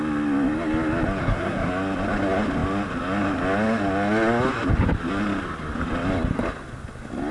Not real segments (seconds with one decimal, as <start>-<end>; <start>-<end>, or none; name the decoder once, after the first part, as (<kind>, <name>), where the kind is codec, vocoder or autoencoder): 1.2-1.7 (codec, SNAC)